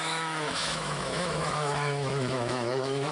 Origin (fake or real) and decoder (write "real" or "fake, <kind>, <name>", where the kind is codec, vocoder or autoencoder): fake, autoencoder, DAC-VAE